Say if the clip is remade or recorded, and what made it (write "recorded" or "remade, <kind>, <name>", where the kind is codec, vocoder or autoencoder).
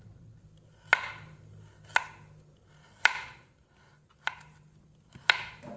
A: recorded